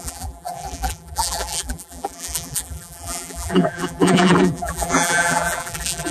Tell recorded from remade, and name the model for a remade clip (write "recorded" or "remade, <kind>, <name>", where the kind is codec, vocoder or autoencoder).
remade, vocoder, BigVGAN v2